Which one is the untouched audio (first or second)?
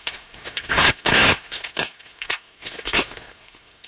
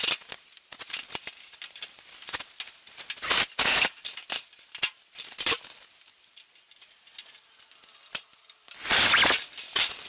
second